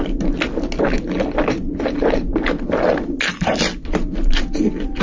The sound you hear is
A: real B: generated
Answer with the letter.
A